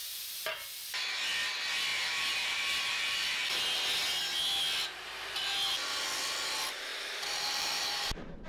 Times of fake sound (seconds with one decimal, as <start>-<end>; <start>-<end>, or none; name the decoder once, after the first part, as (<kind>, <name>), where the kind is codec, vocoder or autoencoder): 1.9-3.6 (vocoder, BigVGAN v2); 6.9-8.5